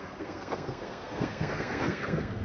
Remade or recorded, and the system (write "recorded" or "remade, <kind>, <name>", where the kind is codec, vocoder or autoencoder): remade, codec, SNAC